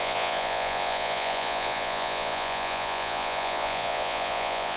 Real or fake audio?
fake